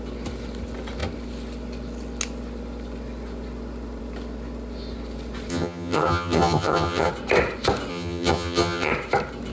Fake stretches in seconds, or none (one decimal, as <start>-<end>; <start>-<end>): 5.5-7.1; 7.9-8.9